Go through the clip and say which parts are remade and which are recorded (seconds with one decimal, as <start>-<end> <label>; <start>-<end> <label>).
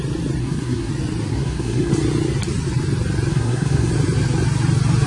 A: 0.0-0.4 recorded; 0.4-0.9 remade; 0.9-1.3 recorded; 1.3-1.9 remade; 1.9-3.3 recorded; 3.3-3.9 remade; 3.9-5.1 recorded